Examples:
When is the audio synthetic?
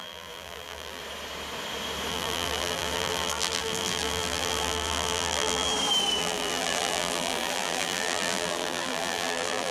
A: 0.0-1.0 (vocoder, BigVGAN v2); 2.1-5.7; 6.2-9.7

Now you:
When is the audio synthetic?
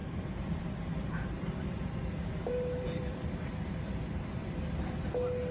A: 0.0-3.3 (vocoder, BigVGAN v2)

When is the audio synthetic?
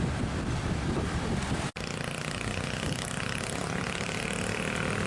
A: 0.0-1.4 (vocoder, BigVGAN v2); 3.4-5.1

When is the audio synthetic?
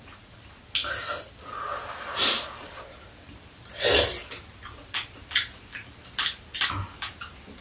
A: 1.7-3.8 (vocoder, BigVGAN v2)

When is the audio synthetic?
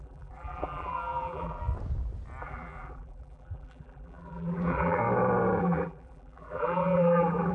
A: 0.0-1.6 (vocoder, BigVGAN v2); 2.4-5.0; 5.6-7.5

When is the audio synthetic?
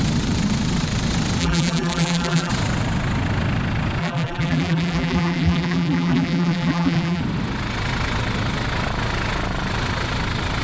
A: 1.4-2.5 (vocoder, BigVGAN v2); 4.0-7.2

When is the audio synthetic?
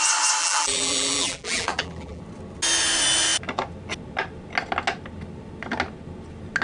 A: 0.4-2.2 (vocoder, BigVGAN v2)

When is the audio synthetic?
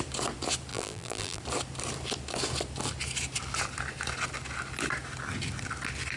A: 0.7-1.4 (vocoder, BigVGAN v2)